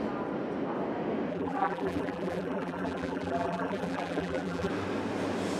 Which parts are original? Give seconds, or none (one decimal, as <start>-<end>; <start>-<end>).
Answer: 0.0-1.3; 4.7-5.6